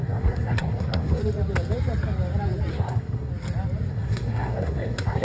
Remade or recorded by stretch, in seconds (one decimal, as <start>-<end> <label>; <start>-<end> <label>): 0.0-1.2 remade; 1.2-2.7 recorded; 2.7-3.3 remade; 3.3-3.9 recorded; 3.9-5.2 remade